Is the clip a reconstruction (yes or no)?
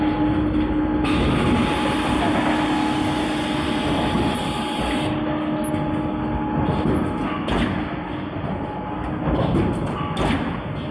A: no